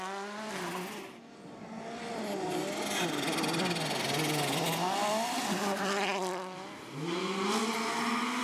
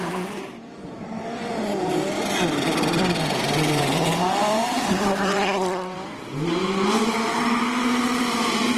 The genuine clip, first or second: first